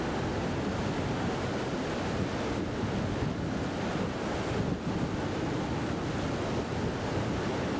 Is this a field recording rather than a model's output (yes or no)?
yes